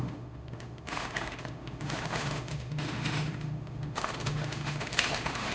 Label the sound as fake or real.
fake